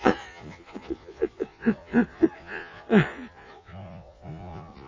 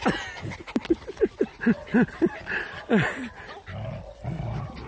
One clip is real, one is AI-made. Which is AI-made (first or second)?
first